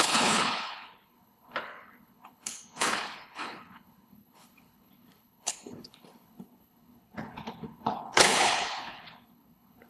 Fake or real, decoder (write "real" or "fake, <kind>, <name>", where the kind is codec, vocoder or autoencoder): fake, codec, HILCodec